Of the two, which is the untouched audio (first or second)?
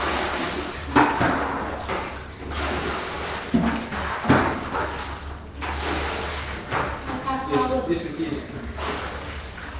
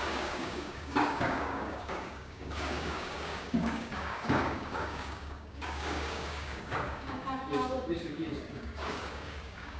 first